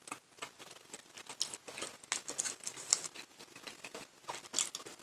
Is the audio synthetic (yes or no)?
no